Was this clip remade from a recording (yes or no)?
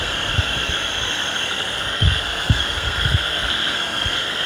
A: yes